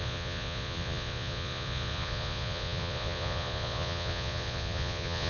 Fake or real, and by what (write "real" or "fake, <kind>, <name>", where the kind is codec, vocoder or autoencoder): fake, vocoder, Vocos